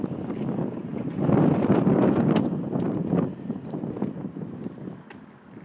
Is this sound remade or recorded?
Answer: recorded